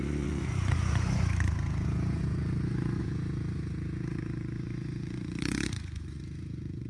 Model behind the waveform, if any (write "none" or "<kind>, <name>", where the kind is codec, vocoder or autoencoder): vocoder, Vocos